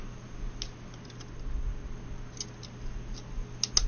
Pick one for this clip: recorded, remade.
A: recorded